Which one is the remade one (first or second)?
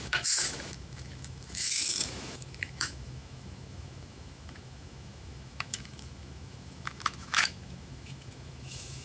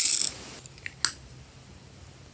first